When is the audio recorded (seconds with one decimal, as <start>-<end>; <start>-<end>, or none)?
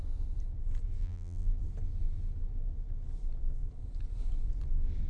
0.0-1.0; 1.6-5.1